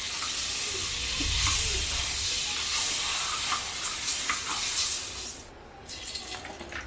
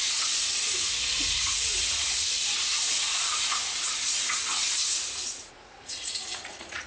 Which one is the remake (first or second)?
second